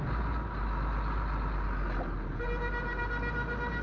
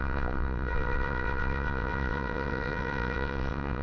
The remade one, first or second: second